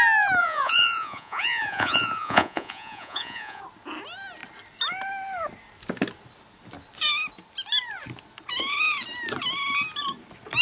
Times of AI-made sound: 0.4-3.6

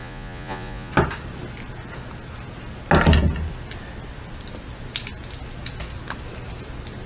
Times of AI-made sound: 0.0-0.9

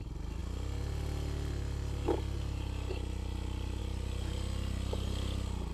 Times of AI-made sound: none

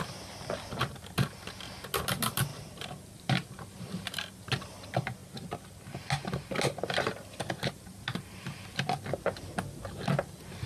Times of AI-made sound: 2.5-4.5